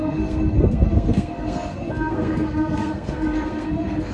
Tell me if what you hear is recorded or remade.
remade